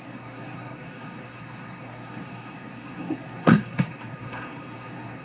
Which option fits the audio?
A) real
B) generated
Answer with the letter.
B